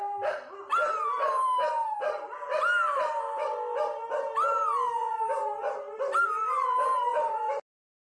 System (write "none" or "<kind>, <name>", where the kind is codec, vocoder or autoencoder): none